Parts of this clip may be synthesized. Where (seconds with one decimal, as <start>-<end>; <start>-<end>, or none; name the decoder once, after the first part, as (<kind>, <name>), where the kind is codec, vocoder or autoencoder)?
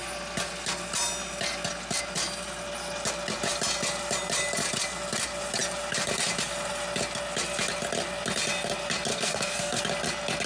9.1-9.8 (codec, SNAC)